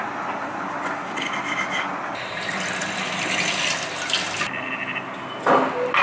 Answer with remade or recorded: recorded